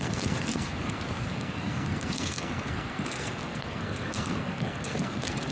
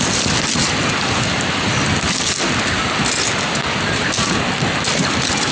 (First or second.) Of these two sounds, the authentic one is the second